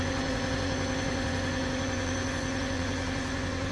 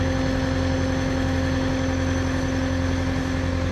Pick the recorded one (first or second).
second